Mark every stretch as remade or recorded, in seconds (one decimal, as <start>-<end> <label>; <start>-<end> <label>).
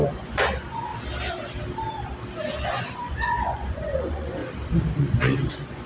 0.0-0.9 remade; 0.9-2.7 recorded; 2.7-4.4 remade; 4.4-5.0 recorded; 5.0-5.9 remade